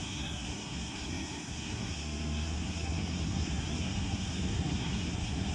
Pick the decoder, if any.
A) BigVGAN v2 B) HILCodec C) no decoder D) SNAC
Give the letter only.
D